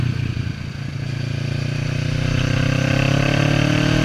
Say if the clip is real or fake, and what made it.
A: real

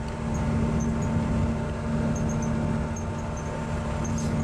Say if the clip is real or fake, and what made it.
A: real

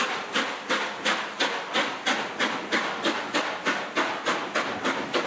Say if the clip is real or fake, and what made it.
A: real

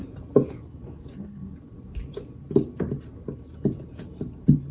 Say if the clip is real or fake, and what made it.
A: fake, vocoder, BigVGAN v2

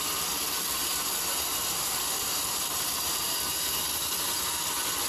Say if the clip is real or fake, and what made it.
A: fake, vocoder, BigVGAN v2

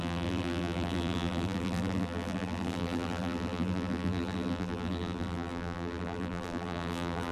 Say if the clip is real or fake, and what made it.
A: fake, vocoder, BigVGAN v2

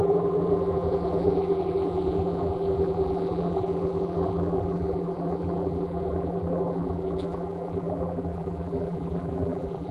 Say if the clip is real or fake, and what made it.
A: fake, vocoder, BigVGAN v2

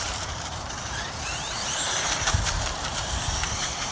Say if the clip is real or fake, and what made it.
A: fake, vocoder, BigVGAN v2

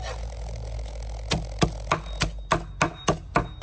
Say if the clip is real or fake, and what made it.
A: real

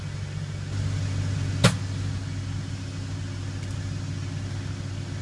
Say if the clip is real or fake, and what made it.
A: real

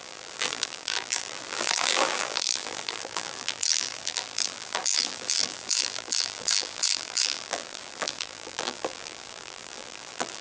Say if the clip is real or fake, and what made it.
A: fake, vocoder, BigVGAN v2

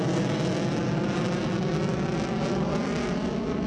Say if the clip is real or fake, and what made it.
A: real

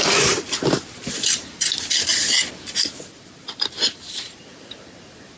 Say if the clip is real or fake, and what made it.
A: fake, vocoder, BigVGAN v2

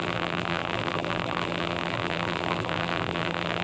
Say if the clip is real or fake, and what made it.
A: fake, vocoder, BigVGAN v2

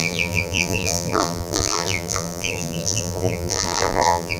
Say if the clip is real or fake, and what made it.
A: fake, vocoder, BigVGAN v2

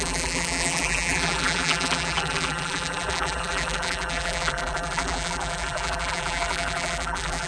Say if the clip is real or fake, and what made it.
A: fake, vocoder, BigVGAN v2